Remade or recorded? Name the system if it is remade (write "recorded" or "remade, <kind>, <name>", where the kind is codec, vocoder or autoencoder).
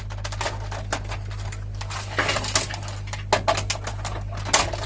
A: recorded